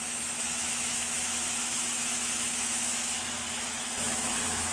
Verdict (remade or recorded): remade